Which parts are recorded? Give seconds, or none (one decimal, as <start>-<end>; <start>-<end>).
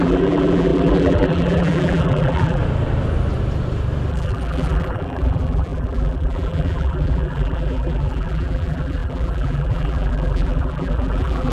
2.6-4.1